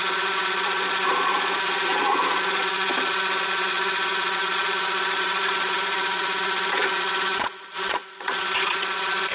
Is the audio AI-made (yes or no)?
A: yes